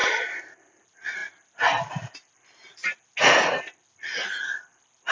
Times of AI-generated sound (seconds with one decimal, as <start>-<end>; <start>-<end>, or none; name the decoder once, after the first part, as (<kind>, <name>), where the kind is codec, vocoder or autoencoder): 0.0-0.6 (vocoder, BigVGAN v2)